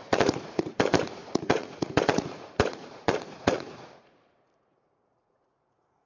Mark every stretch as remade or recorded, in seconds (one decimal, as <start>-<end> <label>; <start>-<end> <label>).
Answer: 0.0-6.1 remade